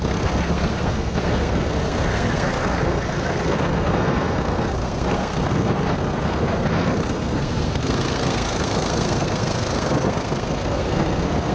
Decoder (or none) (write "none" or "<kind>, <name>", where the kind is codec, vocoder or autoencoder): codec, SNAC